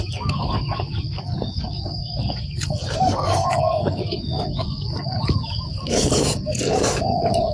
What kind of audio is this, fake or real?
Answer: fake